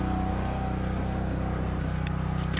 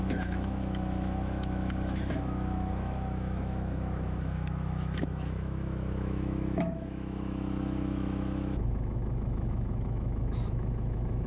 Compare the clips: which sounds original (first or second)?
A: first